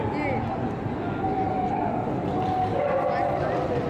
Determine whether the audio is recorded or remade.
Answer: recorded